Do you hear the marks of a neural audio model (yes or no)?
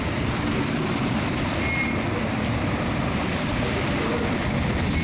no